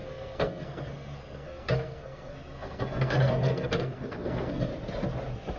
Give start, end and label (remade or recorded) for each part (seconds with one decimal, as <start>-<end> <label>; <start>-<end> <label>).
0.0-4.7 remade; 4.7-5.6 recorded